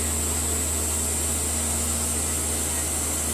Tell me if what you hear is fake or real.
real